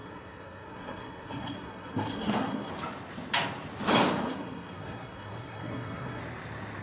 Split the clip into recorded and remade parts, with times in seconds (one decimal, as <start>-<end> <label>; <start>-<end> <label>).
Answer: 0.0-2.7 remade; 2.7-4.2 recorded; 4.2-6.2 remade; 6.2-6.8 recorded